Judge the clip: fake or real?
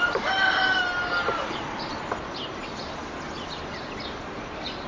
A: real